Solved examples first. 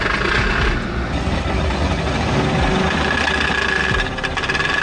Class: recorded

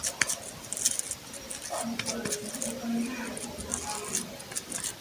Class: recorded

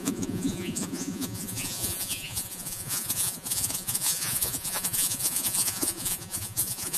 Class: remade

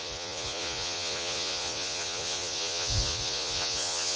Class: remade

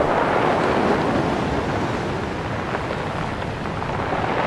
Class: recorded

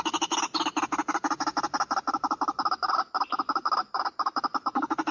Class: recorded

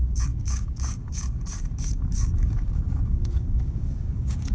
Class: remade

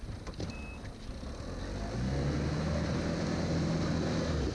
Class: recorded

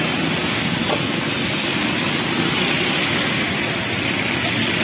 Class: recorded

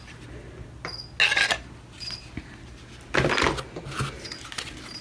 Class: recorded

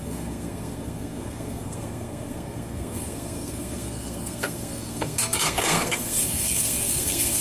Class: remade